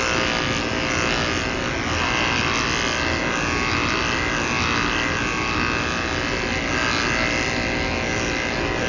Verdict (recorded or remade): recorded